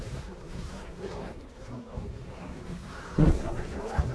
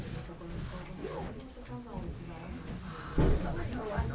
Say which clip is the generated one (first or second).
first